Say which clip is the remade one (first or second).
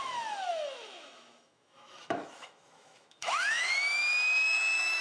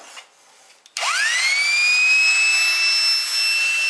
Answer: first